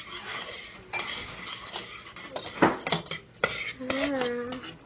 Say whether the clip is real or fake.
real